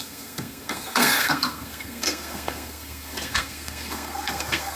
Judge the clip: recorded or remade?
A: remade